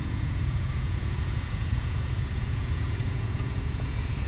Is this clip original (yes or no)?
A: no